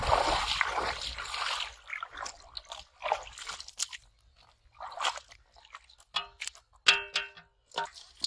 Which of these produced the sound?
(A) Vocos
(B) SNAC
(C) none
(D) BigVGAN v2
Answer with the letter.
C